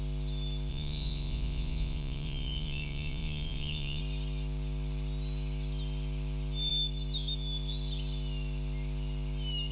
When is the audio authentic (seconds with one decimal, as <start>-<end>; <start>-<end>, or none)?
0.0-0.7; 4.0-9.7